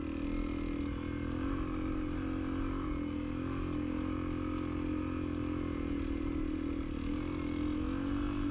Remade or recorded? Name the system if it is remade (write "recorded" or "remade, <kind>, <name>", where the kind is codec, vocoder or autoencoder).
recorded